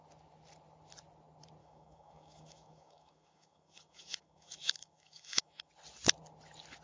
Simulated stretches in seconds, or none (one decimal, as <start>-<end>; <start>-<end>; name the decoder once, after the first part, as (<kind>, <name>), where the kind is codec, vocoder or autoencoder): 1.6-5.7 (autoencoder, DAC-VAE)